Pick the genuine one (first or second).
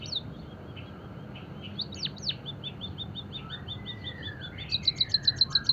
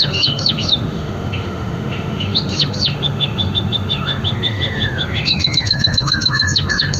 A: first